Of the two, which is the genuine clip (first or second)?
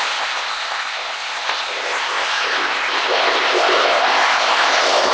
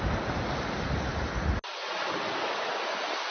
second